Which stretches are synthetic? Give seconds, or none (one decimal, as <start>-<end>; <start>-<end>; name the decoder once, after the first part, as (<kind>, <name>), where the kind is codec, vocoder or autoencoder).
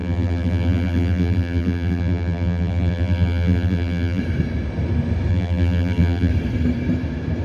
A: 0.0-4.2 (vocoder, BigVGAN v2); 5.3-6.3